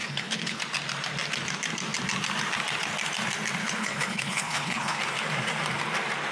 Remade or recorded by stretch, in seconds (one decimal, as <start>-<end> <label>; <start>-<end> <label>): 0.0-0.6 remade; 0.6-3.6 recorded; 3.6-5.0 remade; 5.0-6.3 recorded